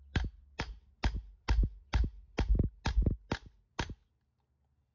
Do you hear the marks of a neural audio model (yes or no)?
no